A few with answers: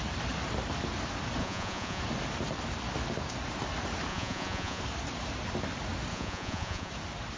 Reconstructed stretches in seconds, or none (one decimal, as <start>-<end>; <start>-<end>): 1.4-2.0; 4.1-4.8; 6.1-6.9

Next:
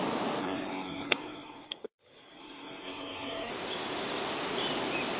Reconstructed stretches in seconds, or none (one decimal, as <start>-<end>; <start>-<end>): 0.4-3.5

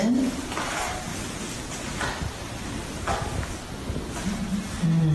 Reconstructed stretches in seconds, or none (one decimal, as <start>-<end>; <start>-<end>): none